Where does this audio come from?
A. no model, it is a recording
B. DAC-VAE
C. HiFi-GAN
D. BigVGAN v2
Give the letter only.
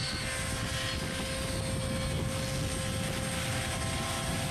A